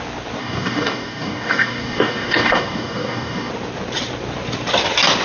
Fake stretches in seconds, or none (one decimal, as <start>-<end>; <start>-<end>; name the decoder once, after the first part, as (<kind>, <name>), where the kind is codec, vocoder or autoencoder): 0.4-3.5 (codec, DAC)